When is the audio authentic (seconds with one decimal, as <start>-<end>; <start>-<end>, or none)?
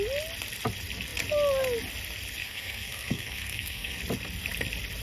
0.0-2.4; 4.0-5.0